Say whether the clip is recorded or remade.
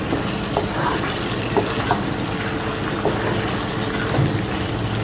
recorded